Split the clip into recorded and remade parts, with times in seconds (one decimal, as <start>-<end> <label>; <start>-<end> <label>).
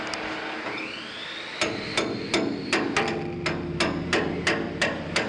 0.0-5.3 recorded